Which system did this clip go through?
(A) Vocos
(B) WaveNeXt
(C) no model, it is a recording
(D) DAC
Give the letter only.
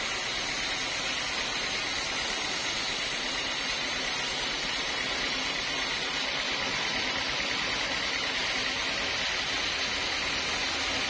C